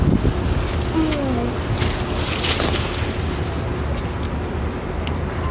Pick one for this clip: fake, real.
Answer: real